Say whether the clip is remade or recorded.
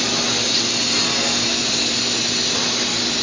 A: recorded